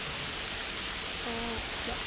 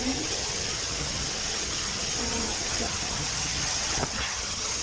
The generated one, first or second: second